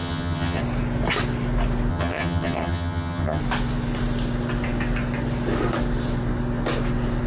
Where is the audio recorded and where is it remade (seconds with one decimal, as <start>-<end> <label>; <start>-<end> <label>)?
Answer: 0.0-0.6 remade; 0.6-1.9 recorded; 1.9-3.4 remade; 3.4-7.3 recorded